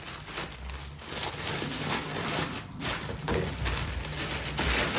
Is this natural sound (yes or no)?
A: yes